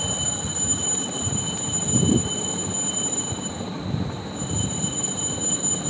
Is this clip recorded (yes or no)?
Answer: yes